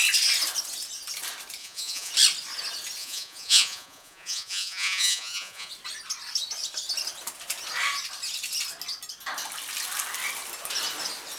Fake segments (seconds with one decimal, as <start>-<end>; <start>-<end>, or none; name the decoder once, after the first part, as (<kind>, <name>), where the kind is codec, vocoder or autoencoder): 1.6-2.1 (vocoder, Vocos); 3.0-5.7